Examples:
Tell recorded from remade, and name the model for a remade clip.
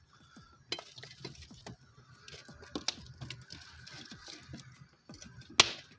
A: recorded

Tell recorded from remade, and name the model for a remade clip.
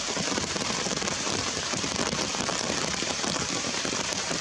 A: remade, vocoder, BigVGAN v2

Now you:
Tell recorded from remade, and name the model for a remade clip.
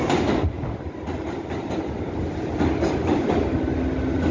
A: recorded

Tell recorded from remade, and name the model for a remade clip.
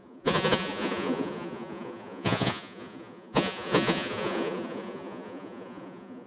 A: remade, vocoder, Vocos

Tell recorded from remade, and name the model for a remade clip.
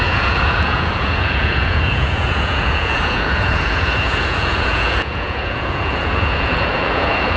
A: remade, vocoder, Vocos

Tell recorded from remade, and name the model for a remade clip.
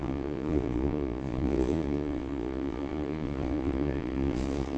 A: remade, vocoder, Vocos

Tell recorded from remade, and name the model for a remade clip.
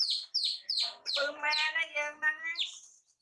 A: remade, vocoder, BigVGAN v2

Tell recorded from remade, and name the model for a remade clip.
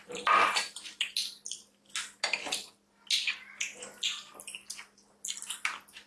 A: recorded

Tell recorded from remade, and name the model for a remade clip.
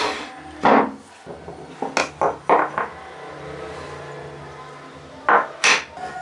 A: recorded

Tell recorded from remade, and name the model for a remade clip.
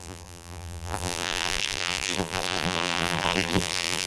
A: remade, vocoder, BigVGAN v2